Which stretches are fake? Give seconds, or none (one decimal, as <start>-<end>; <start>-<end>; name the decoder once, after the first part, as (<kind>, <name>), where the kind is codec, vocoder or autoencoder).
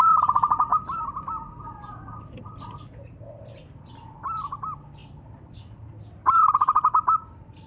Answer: 0.7-3.6 (vocoder, BigVGAN v2)